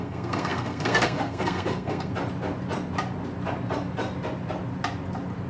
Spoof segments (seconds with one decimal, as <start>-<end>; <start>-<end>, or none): 0.0-2.1